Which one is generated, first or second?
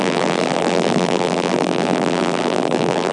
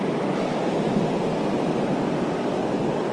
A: first